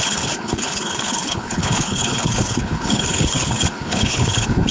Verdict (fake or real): fake